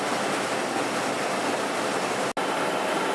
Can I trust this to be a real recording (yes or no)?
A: yes